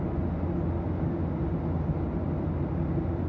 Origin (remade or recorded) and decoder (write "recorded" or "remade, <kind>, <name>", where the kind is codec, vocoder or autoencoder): recorded